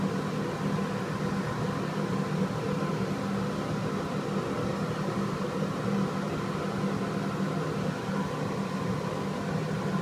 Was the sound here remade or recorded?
recorded